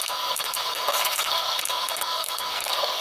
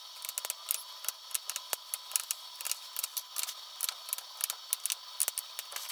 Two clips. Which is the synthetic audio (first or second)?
first